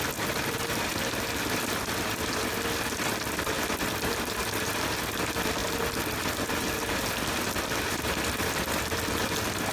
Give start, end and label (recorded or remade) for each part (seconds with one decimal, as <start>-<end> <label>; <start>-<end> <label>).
0.0-9.7 recorded

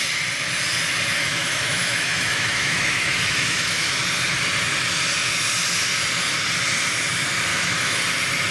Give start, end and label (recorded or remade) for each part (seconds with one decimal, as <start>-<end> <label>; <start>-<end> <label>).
0.0-1.2 recorded; 1.2-3.9 remade; 3.9-7.5 recorded; 7.5-8.0 remade; 8.0-8.5 recorded